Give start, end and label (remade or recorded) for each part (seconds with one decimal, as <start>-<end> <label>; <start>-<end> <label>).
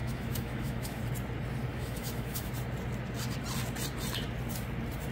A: 0.0-1.0 remade; 1.0-1.7 recorded; 1.7-2.5 remade; 2.5-5.1 recorded